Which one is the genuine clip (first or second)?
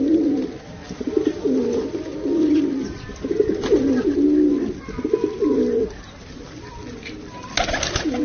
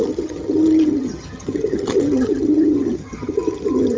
first